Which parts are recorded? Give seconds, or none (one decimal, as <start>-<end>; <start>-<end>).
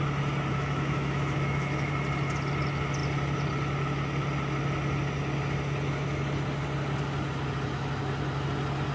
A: 0.0-0.5; 1.9-8.9